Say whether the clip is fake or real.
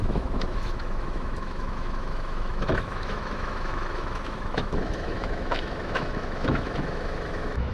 fake